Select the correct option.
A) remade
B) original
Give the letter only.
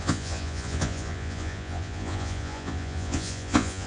A